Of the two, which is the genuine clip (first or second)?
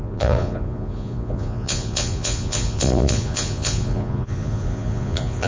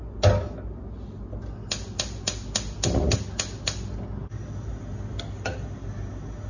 second